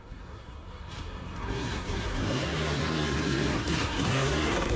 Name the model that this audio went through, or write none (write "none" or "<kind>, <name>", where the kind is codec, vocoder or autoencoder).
codec, SNAC